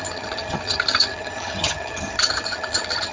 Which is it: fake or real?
fake